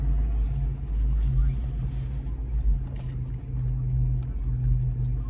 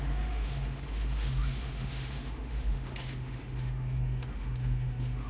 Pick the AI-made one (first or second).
second